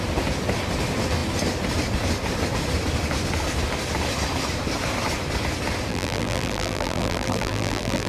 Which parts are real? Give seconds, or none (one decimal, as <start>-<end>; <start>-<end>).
0.0-5.9

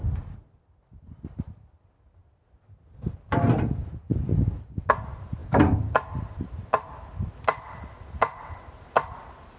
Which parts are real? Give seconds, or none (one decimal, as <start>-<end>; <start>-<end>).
0.0-5.4; 6.5-9.6

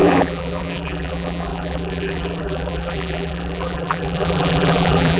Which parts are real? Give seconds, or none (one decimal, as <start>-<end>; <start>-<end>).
none

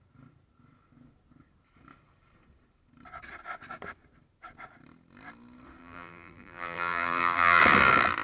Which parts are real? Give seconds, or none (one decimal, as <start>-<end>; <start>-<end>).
0.0-5.8; 7.6-8.2

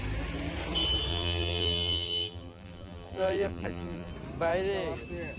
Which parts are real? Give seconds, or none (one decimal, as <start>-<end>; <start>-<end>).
0.0-1.1; 4.1-5.4